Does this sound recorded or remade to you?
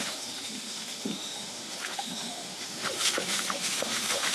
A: remade